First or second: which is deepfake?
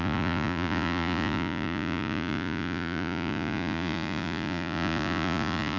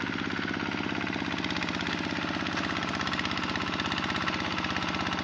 first